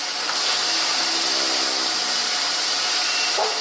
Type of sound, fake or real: real